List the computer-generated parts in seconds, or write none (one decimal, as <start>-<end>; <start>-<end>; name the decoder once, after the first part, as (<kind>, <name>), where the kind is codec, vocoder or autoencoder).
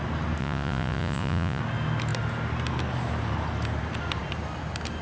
0.4-1.6 (vocoder, Vocos)